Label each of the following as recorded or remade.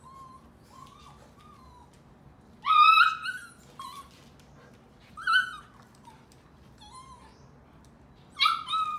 recorded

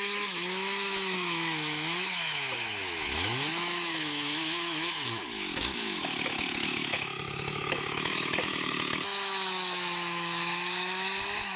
remade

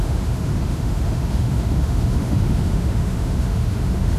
remade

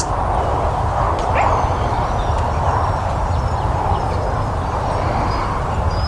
recorded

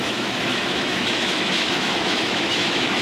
remade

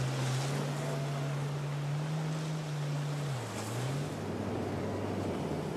recorded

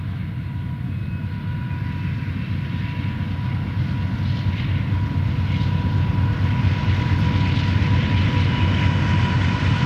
recorded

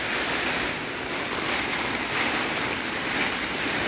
recorded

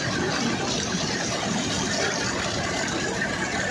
recorded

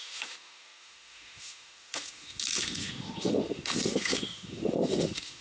remade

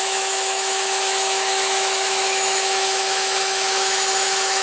remade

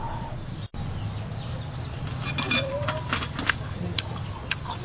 recorded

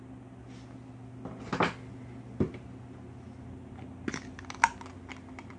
recorded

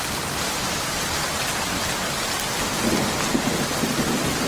recorded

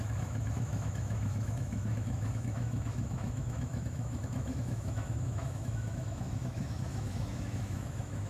remade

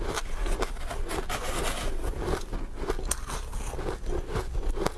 recorded